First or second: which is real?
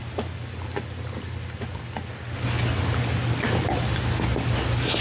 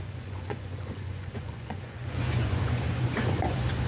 first